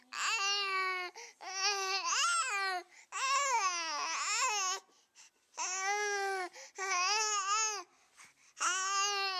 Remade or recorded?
recorded